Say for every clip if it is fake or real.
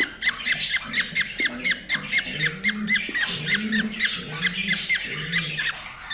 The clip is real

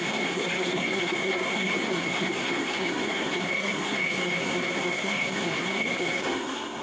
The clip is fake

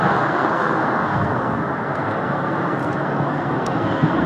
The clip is fake